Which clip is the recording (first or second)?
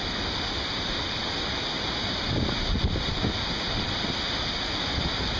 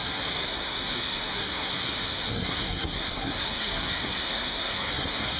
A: first